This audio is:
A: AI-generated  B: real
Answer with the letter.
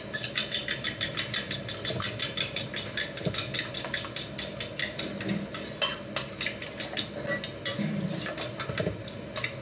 B